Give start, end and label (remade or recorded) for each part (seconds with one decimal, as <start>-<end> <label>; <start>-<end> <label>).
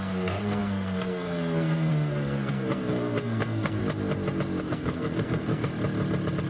0.0-3.8 remade; 3.8-4.6 recorded; 4.6-5.7 remade; 5.7-6.5 recorded